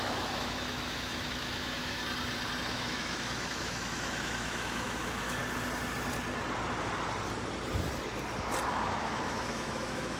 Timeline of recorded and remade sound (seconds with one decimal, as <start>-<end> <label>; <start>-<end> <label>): 0.0-2.0 remade; 2.0-2.7 recorded; 2.7-5.4 remade; 5.4-8.7 recorded; 8.7-10.2 remade